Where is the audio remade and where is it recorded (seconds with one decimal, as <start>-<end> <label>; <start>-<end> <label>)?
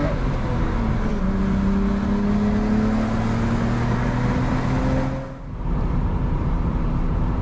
0.0-1.1 remade; 1.1-5.5 recorded; 5.5-7.4 remade